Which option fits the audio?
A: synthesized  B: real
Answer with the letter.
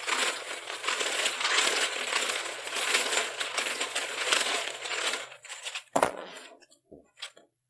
A